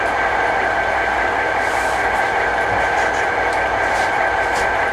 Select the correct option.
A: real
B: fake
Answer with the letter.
B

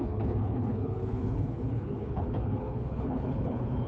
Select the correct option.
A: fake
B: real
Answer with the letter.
A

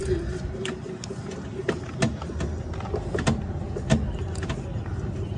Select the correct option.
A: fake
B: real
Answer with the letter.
B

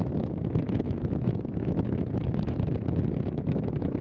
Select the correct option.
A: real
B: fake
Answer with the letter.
B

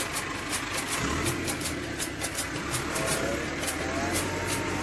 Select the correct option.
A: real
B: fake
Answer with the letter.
A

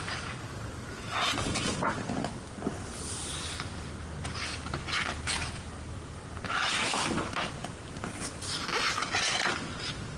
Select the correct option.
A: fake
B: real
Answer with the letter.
B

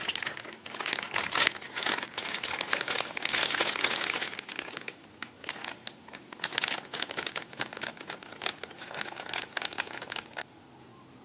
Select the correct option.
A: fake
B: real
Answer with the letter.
B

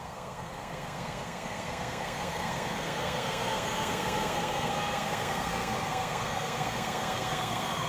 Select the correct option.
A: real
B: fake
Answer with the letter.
B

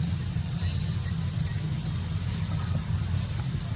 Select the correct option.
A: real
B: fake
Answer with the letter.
A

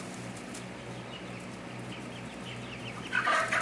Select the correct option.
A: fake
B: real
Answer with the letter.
B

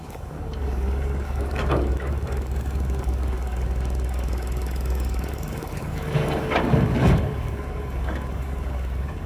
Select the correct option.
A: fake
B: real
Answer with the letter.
A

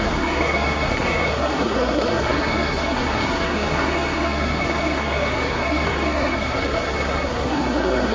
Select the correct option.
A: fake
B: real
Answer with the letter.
A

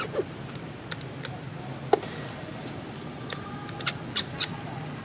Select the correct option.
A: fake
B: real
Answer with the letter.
B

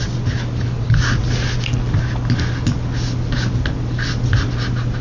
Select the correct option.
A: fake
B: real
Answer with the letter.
B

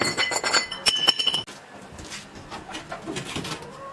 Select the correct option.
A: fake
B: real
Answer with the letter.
B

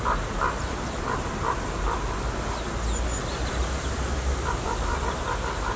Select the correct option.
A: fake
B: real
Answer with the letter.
B